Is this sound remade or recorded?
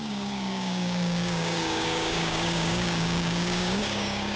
remade